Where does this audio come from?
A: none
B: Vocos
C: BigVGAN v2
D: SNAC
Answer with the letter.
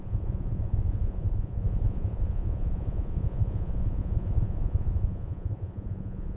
B